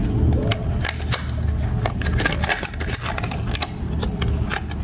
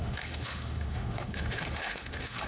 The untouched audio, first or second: first